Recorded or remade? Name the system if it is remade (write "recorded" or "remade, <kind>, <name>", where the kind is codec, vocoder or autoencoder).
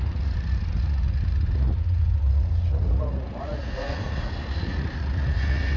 remade, vocoder, Vocos